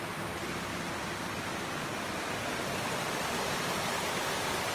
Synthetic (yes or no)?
no